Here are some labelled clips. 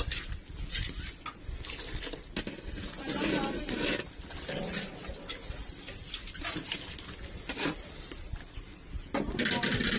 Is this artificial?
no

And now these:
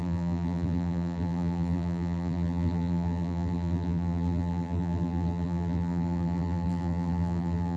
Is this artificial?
yes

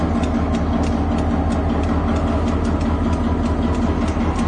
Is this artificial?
no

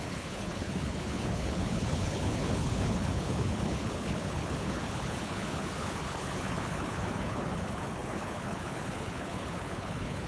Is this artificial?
yes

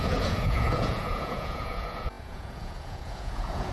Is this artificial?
yes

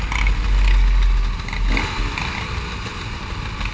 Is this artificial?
no